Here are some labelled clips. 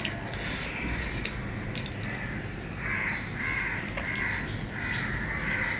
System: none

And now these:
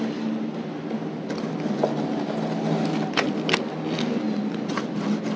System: none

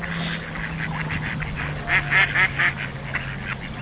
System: none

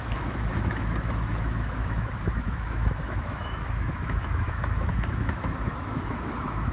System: autoencoder, DAC-VAE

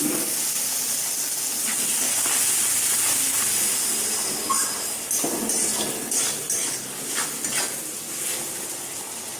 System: none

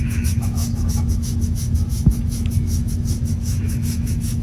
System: autoencoder, DAC-VAE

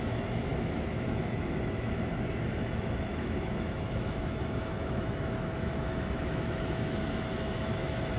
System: autoencoder, DAC-VAE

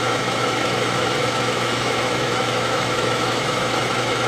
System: autoencoder, DAC-VAE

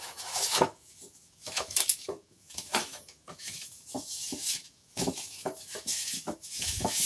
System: autoencoder, DAC-VAE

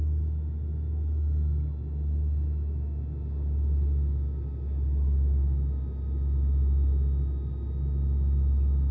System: none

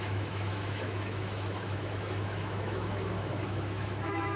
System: autoencoder, DAC-VAE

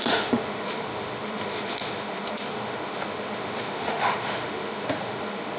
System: autoencoder, DAC-VAE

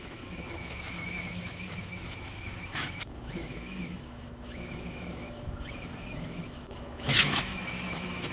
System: autoencoder, DAC-VAE